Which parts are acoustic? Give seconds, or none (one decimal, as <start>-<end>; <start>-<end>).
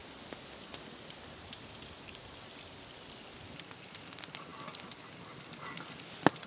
0.0-6.5